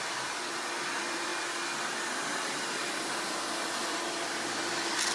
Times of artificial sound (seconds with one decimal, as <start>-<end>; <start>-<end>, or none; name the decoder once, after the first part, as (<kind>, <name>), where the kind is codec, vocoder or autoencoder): none

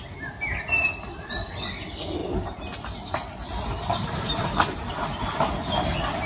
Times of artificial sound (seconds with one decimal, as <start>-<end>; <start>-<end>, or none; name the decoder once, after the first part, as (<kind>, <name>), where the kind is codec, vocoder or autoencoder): 2.2-5.5 (vocoder, BigVGAN v2)

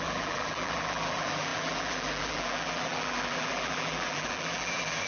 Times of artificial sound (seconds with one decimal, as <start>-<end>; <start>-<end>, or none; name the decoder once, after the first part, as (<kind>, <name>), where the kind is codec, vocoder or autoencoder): 0.0-5.1 (vocoder, BigVGAN v2)